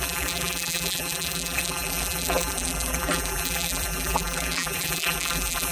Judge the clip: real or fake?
fake